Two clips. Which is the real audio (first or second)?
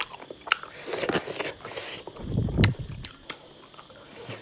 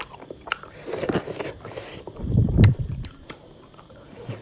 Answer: first